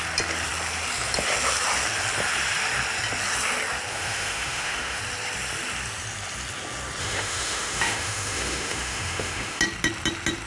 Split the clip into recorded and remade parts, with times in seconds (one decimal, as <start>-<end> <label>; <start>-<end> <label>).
0.0-3.9 recorded; 3.9-5.0 remade; 5.0-7.0 recorded; 7.0-9.6 remade; 9.6-10.5 recorded